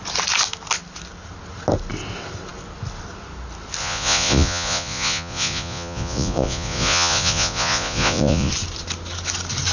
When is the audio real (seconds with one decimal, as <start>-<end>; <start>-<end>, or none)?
0.0-3.8; 8.5-9.7